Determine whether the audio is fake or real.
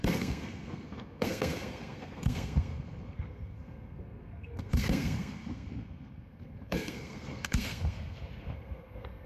fake